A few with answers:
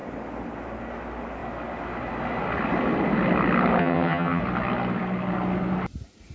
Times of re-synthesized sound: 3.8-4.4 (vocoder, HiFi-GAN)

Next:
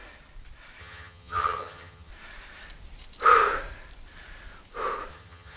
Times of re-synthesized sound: 0.8-2.1 (vocoder, HiFi-GAN); 5.1-5.6